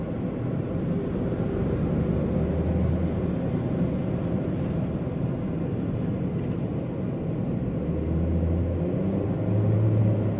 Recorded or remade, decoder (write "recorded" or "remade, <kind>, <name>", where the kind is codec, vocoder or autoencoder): recorded